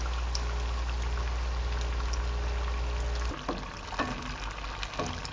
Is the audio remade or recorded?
recorded